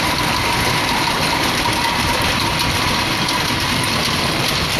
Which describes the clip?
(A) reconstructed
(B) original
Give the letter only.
B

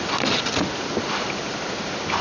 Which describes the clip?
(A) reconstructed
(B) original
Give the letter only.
B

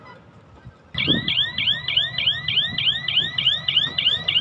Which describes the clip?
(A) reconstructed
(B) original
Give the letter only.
B